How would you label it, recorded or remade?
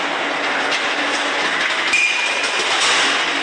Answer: recorded